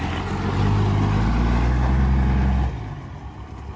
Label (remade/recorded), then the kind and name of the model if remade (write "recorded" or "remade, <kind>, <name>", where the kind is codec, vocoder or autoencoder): recorded